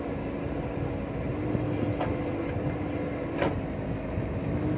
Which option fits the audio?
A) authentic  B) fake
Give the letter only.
A